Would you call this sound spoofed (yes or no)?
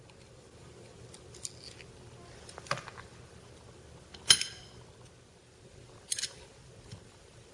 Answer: no